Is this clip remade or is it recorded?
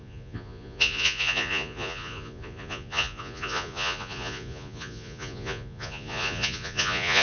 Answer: remade